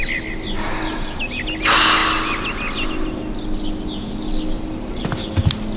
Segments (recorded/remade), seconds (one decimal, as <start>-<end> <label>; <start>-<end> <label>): 0.0-5.8 recorded